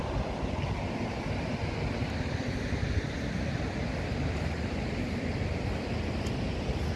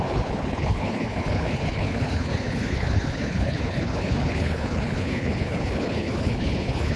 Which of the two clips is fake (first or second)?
second